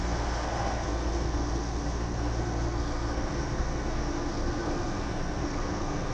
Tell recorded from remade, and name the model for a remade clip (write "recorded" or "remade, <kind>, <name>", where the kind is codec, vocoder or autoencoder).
remade, codec, SNAC